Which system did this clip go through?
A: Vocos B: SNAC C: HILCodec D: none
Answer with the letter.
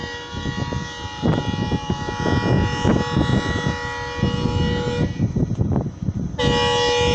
D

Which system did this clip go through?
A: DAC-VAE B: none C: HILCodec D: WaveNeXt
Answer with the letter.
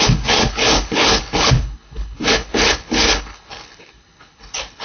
C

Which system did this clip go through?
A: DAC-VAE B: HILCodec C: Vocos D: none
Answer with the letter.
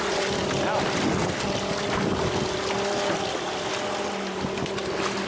D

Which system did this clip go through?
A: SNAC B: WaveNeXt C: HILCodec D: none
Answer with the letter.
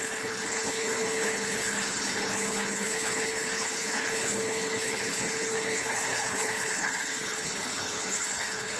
C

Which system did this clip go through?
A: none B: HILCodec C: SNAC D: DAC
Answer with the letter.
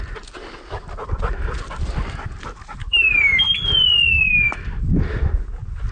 A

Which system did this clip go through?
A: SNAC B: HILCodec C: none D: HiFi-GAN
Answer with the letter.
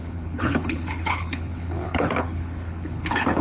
B